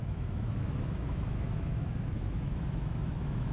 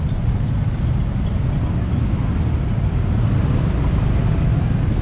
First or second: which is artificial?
first